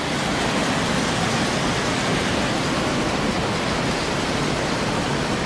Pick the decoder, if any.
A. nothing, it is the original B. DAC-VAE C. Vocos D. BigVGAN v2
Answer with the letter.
A